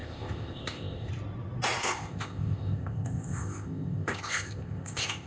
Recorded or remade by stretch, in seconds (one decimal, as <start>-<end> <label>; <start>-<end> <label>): 0.0-1.1 remade; 1.1-1.8 recorded; 1.8-5.3 remade